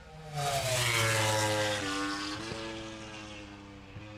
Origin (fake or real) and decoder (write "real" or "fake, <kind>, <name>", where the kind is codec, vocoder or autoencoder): real